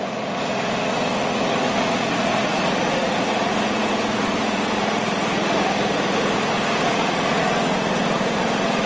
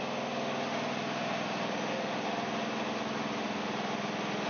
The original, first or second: second